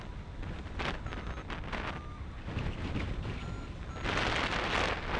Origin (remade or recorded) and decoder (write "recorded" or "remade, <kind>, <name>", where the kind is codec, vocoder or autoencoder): recorded